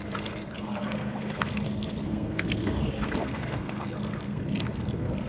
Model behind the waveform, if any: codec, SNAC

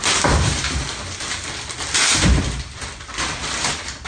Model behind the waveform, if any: vocoder, BigVGAN v2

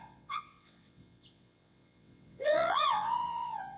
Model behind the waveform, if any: vocoder, WaveNeXt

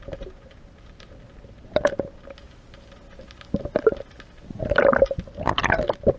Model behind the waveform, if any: none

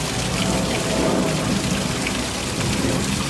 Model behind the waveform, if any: none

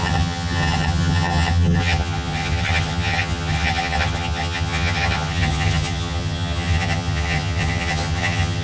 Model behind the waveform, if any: vocoder, HiFi-GAN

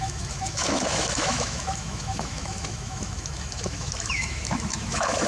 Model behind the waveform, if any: autoencoder, DAC-VAE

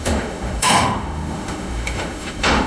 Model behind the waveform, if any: autoencoder, DAC-VAE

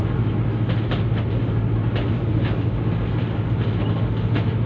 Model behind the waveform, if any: none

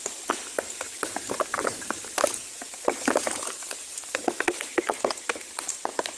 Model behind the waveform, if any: none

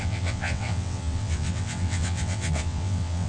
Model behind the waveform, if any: vocoder, WaveNeXt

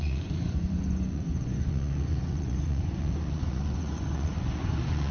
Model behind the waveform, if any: vocoder, Vocos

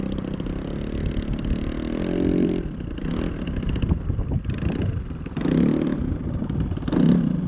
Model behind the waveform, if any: none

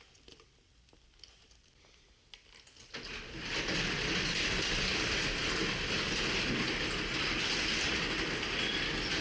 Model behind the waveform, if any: none